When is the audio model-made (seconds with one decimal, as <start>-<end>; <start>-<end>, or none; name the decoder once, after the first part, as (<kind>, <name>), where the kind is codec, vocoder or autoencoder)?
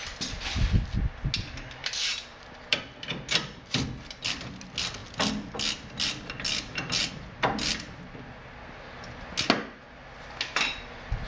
1.8-2.8 (vocoder, BigVGAN v2)